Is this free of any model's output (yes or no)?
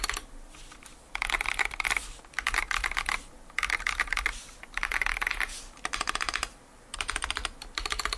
yes